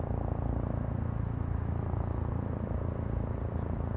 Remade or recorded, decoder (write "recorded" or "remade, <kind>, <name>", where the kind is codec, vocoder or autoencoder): recorded